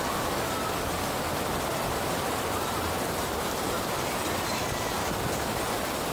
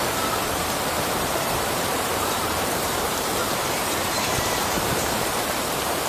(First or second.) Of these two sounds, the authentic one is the first